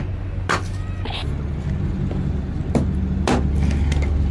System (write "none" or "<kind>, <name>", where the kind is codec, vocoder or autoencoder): none